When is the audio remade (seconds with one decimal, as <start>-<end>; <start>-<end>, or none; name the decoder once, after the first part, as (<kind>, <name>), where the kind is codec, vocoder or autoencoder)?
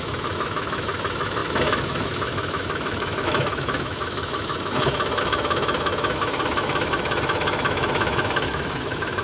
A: 0.0-9.2 (autoencoder, DAC-VAE)